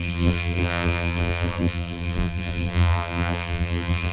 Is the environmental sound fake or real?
fake